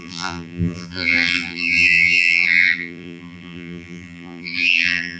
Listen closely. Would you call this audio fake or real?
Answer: fake